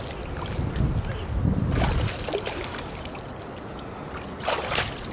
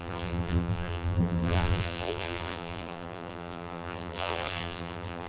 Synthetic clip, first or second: second